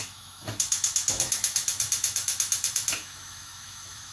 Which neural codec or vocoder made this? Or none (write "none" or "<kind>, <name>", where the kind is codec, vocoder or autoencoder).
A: autoencoder, DAC-VAE